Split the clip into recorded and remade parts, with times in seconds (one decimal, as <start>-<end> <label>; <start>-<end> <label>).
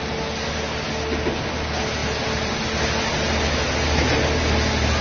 0.0-5.0 recorded